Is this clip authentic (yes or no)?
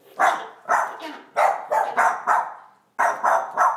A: yes